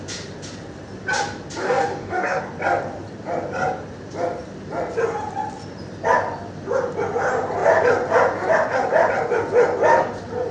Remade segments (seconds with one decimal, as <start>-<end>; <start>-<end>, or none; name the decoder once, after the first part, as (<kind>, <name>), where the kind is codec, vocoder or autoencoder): 1.6-2.4 (codec, DAC)